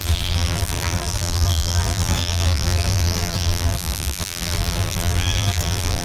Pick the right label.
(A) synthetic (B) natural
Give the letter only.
A